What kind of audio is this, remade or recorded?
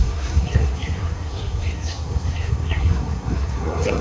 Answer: remade